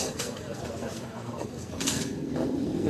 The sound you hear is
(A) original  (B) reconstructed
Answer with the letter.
B